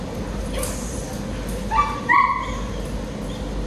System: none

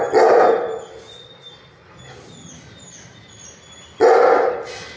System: none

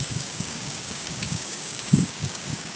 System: codec, DAC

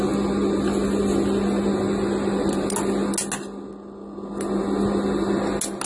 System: none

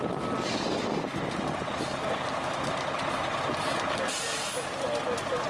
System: none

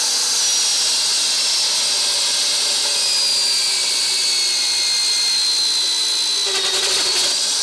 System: none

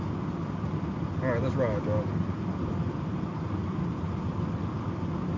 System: none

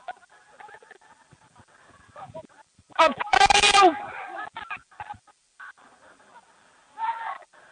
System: vocoder, BigVGAN v2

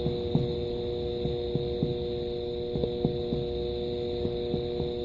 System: none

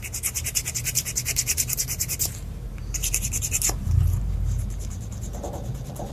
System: vocoder, BigVGAN v2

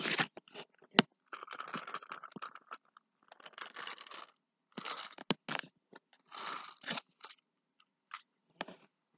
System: none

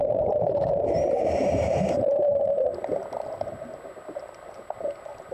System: none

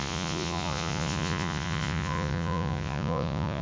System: vocoder, Vocos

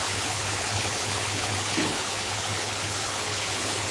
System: codec, HILCodec